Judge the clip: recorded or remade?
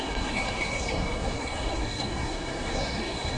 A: remade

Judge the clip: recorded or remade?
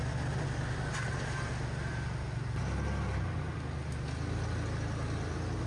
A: recorded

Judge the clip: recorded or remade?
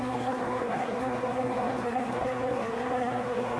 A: remade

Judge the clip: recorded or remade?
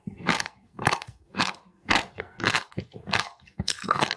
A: remade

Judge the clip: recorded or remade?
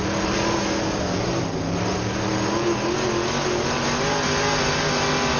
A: recorded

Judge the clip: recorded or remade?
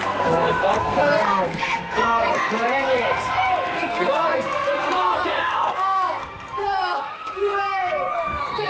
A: remade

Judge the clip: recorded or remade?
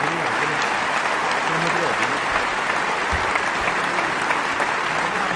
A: recorded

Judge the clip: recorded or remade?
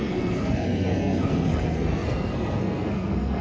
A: remade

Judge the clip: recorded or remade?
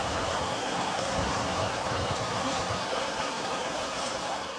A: remade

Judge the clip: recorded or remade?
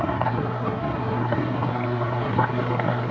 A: remade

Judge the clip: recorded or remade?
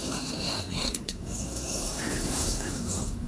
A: remade